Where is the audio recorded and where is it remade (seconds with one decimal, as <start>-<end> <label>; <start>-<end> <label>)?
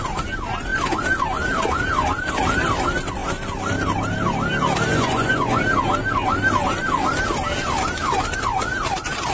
0.0-4.9 recorded; 4.9-5.6 remade; 5.6-9.3 recorded